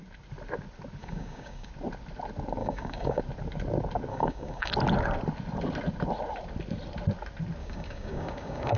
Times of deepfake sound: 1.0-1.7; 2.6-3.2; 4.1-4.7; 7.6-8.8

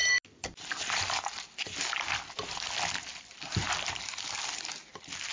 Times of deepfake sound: none

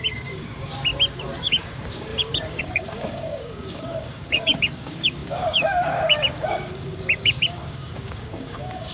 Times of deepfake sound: 0.0-0.7; 1.4-8.9

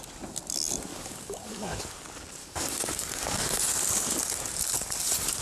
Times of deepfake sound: 0.9-1.8; 2.4-3.6

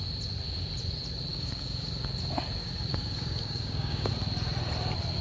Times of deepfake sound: 1.3-1.9; 2.6-4.1